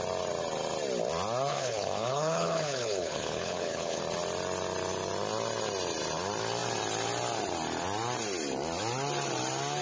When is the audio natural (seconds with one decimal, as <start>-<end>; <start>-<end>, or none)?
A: 0.0-1.5; 4.0-9.8